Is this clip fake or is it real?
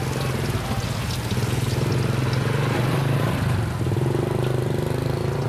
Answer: real